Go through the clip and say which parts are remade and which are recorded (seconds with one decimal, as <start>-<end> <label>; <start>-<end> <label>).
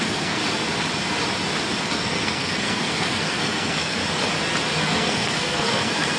0.0-0.4 remade; 0.4-1.8 recorded; 1.8-4.0 remade; 4.0-4.8 recorded; 4.8-6.2 remade